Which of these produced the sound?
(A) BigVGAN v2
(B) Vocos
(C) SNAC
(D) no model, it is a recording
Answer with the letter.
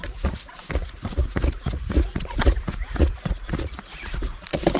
B